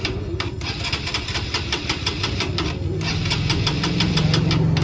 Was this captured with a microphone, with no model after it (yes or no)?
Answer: yes